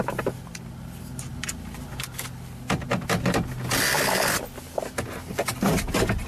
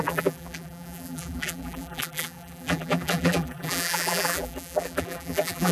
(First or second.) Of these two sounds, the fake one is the second